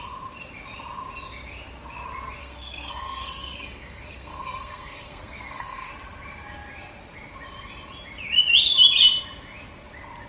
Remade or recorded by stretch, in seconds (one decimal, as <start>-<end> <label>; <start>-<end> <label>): 0.0-2.4 recorded; 2.4-5.9 remade; 5.9-10.3 recorded